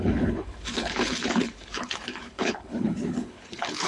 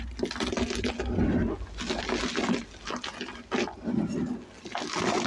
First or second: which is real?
second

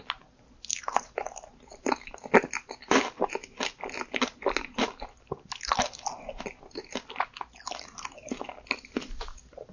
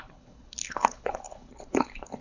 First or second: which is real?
first